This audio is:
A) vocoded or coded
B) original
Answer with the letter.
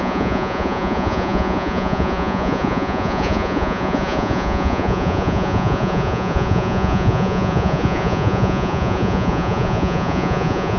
A